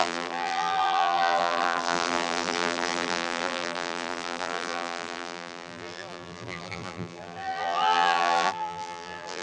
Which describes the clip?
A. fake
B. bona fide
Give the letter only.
A